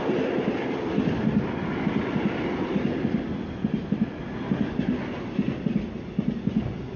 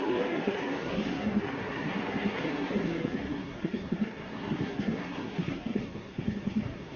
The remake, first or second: second